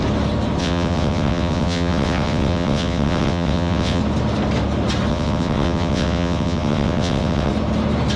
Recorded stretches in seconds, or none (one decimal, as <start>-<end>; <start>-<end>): 0.0-0.6; 4.0-5.1; 7.5-8.2